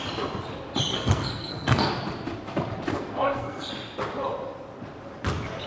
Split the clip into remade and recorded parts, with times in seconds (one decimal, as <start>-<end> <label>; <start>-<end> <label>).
0.0-0.9 recorded; 0.9-1.9 remade; 1.9-2.9 recorded; 2.9-3.7 remade; 3.7-5.7 recorded